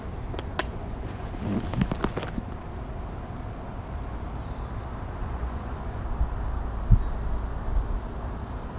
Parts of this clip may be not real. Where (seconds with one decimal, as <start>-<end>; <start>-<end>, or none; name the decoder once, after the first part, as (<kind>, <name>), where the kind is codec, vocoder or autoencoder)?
0.6-1.3 (vocoder, Vocos); 5.2-6.0

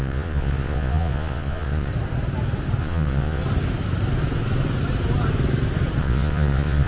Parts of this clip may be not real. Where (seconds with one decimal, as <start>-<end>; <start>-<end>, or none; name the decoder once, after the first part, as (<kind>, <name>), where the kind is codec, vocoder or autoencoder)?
0.0-1.9 (vocoder, Vocos); 2.8-3.4; 6.0-6.9

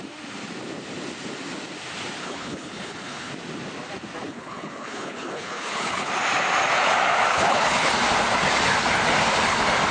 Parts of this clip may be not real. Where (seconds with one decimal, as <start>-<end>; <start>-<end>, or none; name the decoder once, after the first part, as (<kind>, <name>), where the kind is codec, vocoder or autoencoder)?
2.2-3.3 (codec, HILCodec); 4.3-6.1; 7.3-7.9

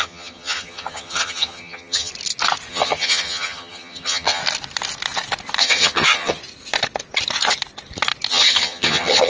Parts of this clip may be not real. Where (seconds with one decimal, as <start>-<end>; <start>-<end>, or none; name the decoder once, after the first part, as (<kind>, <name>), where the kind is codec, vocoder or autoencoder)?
0.0-2.1 (vocoder, HiFi-GAN); 2.7-4.4; 5.6-6.4; 8.3-9.3

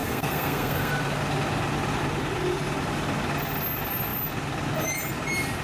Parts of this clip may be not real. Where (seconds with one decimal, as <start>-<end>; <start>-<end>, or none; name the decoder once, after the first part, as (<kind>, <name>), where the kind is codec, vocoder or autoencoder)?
0.0-0.9 (codec, SNAC)

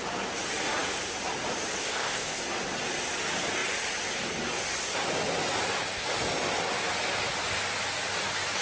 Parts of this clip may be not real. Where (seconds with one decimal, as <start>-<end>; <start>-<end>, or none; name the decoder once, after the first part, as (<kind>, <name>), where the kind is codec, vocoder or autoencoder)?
1.8-2.4 (codec, ZipCodec)

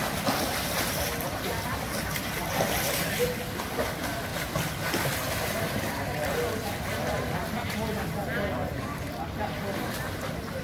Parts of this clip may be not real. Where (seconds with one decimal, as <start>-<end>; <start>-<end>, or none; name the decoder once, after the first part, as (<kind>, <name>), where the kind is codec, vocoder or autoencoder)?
none